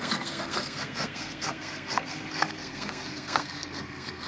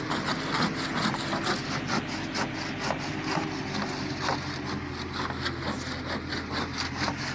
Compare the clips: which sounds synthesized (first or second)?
first